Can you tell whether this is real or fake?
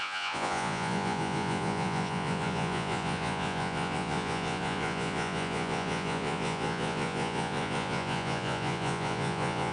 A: fake